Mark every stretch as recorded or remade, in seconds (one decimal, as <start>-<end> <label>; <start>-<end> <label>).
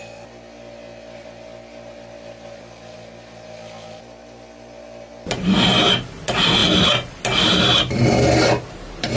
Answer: 0.0-9.2 recorded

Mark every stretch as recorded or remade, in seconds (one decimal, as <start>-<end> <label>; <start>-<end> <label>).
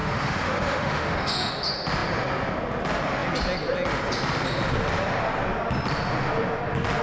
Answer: 0.0-1.5 remade; 1.5-7.0 recorded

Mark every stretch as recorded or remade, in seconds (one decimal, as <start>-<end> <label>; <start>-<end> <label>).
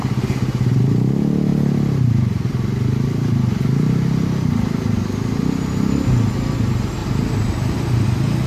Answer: 0.0-7.0 recorded; 7.0-7.5 remade; 7.5-8.5 recorded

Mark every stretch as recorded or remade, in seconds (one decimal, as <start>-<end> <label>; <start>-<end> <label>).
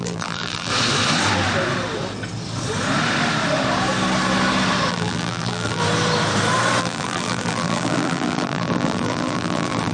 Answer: 0.0-0.7 remade; 0.7-4.9 recorded; 4.9-5.8 remade; 5.8-6.8 recorded; 6.8-9.9 remade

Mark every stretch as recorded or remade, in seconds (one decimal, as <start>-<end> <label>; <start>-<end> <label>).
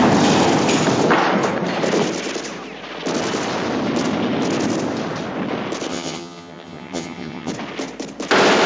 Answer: 0.0-5.9 recorded; 5.9-7.5 remade; 7.5-8.7 recorded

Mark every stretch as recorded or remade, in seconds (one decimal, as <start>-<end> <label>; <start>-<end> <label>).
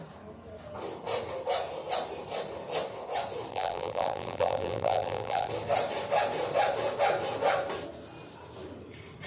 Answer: 0.0-3.5 recorded; 3.5-5.5 remade; 5.5-9.3 recorded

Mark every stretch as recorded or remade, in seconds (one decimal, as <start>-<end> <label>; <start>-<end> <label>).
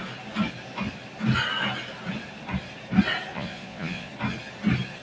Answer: 0.0-3.3 recorded; 3.3-4.1 remade; 4.1-5.0 recorded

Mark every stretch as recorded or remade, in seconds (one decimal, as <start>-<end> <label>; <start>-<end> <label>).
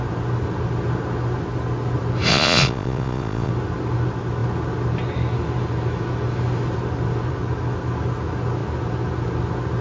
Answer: 0.0-2.3 recorded; 2.3-3.5 remade; 3.5-9.8 recorded